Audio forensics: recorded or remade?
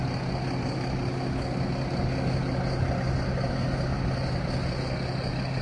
recorded